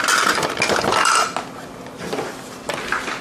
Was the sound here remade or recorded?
recorded